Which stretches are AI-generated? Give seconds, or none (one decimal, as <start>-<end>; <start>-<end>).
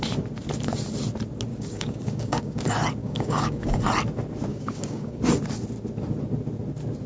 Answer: 1.5-2.6; 3.0-3.8; 4.5-5.2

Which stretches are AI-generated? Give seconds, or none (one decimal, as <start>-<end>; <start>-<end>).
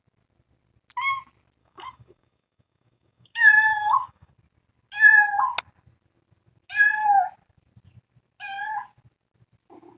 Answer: 1.6-4.3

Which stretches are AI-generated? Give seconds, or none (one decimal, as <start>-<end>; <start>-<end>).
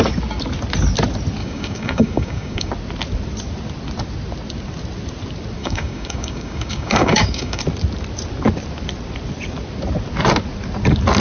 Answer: 1.4-2.7; 5.6-7.6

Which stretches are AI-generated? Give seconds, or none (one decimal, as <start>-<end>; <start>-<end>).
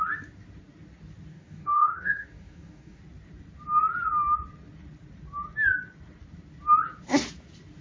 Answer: 1.3-3.0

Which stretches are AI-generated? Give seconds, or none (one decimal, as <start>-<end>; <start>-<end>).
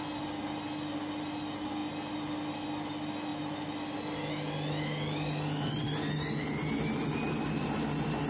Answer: none